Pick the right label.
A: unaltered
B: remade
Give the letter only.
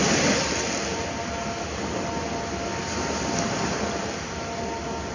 A